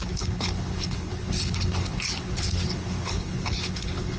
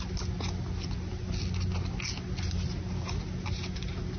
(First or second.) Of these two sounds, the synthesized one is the first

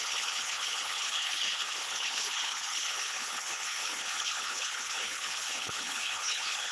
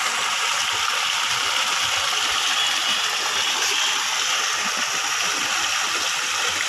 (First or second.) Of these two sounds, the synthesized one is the first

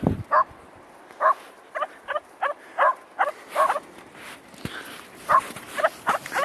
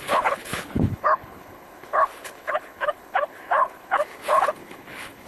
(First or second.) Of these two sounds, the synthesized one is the second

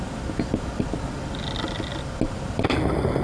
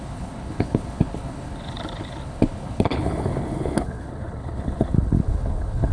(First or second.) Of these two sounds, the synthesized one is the second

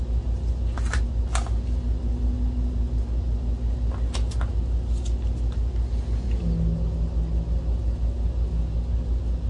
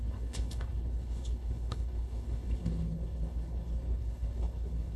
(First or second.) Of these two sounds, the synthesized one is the second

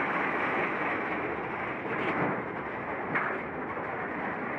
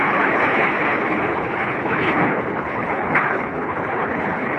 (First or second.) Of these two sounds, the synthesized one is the second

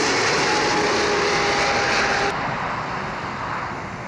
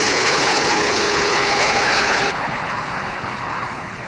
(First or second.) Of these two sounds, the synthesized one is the second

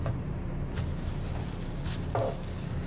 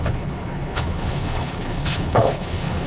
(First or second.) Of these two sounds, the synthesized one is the second